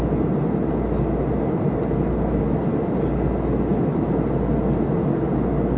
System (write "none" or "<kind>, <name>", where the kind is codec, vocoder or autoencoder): none